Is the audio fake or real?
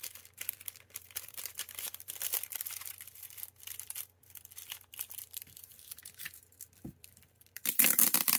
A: fake